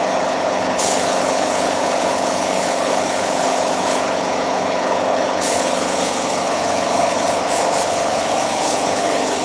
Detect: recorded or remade remade